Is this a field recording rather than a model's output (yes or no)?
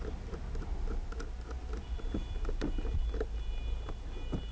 yes